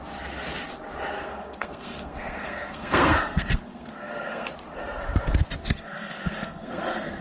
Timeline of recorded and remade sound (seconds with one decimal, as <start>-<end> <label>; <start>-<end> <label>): 0.0-1.1 recorded; 1.1-4.5 remade; 4.5-5.6 recorded; 5.6-7.2 remade